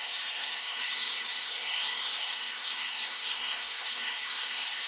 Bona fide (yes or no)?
no